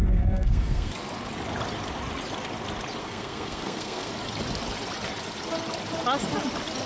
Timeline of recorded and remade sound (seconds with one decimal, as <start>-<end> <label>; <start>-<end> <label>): 0.0-0.9 remade; 0.9-3.0 recorded; 3.0-4.1 remade; 4.1-6.9 recorded